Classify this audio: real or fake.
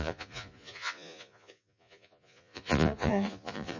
fake